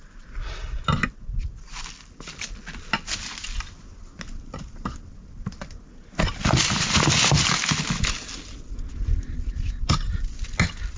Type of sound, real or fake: real